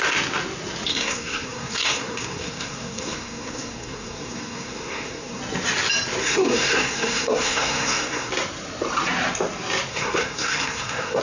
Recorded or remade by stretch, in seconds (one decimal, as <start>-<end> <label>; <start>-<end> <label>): 0.0-0.9 recorded; 0.9-5.4 remade; 5.4-6.2 recorded; 6.2-8.3 remade; 8.3-9.9 recorded; 9.9-11.2 remade